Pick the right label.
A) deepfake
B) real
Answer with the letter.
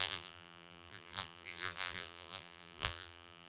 A